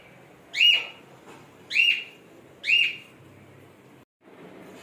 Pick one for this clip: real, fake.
real